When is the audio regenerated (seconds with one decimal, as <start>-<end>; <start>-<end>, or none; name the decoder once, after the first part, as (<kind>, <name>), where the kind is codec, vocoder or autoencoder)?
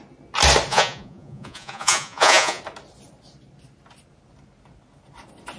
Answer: 0.7-2.6 (vocoder, Vocos)